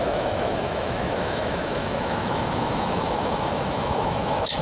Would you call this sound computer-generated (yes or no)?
yes